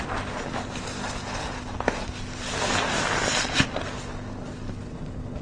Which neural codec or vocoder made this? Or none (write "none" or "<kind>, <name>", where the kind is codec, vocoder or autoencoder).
none